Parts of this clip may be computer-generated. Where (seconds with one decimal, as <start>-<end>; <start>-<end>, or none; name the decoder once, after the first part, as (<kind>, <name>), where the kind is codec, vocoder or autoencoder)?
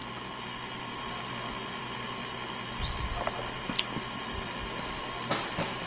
none